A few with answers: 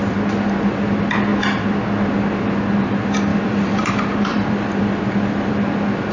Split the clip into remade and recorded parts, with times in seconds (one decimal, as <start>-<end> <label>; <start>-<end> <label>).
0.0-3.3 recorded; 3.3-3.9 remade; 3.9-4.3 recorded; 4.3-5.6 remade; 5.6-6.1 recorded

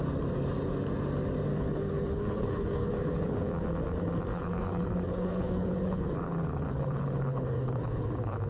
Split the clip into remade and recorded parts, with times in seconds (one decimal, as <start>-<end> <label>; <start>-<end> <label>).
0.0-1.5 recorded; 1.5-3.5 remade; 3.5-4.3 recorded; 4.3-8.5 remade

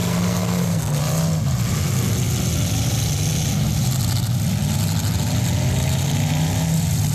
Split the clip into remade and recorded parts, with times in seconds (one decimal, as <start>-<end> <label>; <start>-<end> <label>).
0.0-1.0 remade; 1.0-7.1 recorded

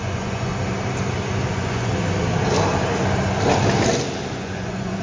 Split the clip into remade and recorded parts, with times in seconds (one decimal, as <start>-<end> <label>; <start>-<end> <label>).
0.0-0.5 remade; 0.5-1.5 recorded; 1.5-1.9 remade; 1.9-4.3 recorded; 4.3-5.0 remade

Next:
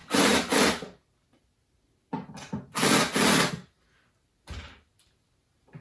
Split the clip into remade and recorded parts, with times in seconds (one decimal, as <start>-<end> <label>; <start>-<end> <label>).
0.0-5.8 recorded